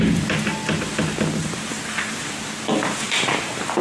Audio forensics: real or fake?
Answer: real